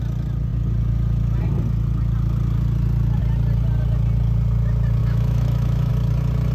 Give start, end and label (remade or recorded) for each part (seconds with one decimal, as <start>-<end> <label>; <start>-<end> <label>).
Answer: 0.0-5.0 recorded; 5.0-5.9 remade; 5.9-6.5 recorded